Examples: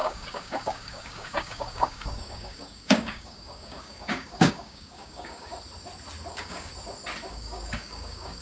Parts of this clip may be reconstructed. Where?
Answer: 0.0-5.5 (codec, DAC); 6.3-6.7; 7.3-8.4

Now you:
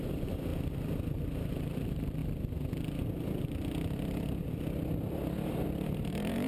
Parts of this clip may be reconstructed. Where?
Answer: 0.0-0.5 (vocoder, BigVGAN v2); 1.1-2.2; 6.1-6.5